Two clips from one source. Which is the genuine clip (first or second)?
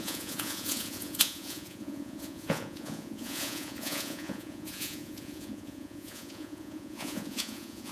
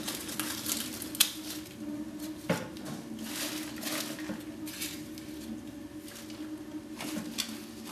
second